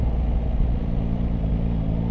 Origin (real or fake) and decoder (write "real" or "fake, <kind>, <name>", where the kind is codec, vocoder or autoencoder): real